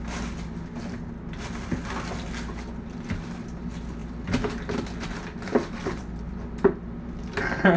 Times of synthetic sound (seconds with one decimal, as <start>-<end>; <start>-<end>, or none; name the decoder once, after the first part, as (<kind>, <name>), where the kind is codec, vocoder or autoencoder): none